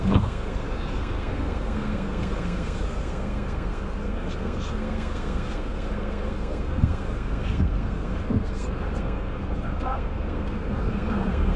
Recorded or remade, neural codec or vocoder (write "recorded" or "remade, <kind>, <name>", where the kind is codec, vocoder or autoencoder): remade, codec, SNAC